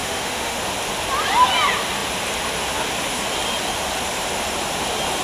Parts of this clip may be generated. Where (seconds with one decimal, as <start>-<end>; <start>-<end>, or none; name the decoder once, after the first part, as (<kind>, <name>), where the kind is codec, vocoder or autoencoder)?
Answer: 0.0-0.6 (autoencoder, DAC-VAE)